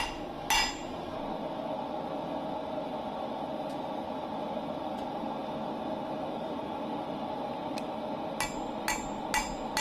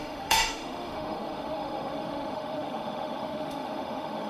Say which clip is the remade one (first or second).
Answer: second